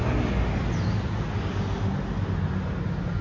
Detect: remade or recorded recorded